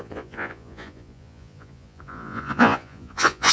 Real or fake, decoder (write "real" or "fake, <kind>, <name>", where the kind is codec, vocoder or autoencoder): fake, vocoder, Vocos